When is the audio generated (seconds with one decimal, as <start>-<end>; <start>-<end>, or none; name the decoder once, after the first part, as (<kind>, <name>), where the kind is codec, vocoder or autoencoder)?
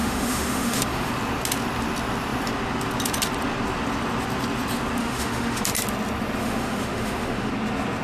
0.0-1.1 (autoencoder, DAC-VAE); 5.0-5.6; 6.4-7.5